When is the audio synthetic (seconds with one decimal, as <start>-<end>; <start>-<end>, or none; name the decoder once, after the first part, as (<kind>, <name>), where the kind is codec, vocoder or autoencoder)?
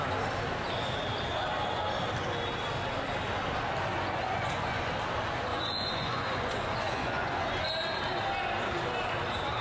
3.9-4.9 (vocoder, Vocos); 5.5-7.7